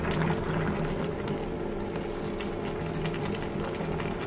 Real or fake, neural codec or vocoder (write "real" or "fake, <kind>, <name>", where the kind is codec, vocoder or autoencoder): real